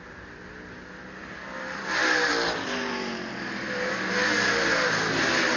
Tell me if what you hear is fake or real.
real